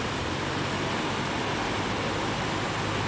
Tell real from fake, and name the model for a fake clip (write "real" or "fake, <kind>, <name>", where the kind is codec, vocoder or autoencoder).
real